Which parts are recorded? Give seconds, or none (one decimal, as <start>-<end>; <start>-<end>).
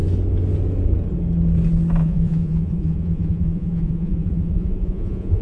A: 0.0-2.0